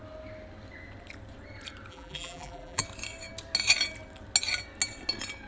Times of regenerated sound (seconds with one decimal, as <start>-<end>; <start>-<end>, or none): 1.9-2.8